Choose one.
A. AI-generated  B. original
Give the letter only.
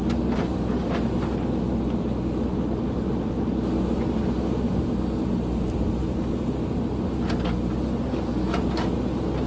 B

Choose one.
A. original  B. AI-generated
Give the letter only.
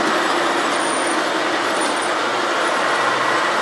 A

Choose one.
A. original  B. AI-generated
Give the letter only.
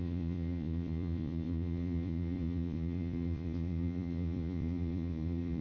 B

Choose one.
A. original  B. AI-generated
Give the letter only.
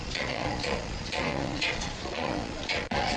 B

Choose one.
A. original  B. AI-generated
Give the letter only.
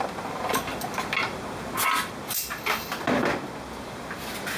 A